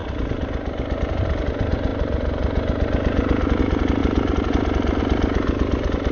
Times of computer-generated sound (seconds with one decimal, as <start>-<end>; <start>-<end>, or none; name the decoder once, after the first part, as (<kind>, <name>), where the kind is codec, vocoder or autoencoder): none